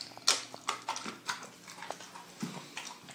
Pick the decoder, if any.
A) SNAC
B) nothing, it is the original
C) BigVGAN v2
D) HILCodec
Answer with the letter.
B